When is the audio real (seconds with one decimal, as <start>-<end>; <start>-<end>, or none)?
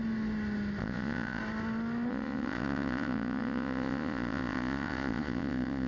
0.0-0.8; 1.4-2.1